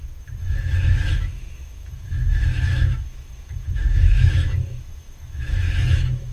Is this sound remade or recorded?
remade